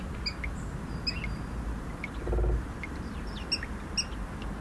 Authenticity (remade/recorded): recorded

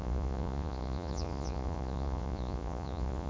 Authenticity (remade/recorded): remade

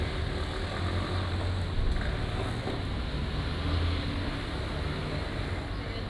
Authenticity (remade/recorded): recorded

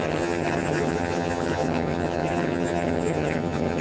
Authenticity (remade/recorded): remade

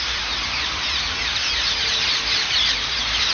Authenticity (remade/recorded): recorded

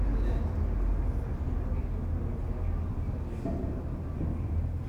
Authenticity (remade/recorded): recorded